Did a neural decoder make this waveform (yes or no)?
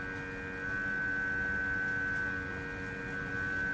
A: no